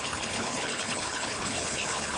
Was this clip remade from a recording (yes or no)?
yes